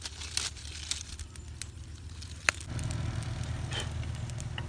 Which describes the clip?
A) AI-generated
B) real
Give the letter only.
B